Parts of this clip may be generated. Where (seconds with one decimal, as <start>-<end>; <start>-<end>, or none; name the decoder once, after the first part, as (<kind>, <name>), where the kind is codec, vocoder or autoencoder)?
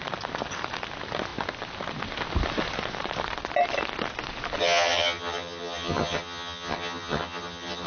4.6-7.9 (vocoder, HiFi-GAN)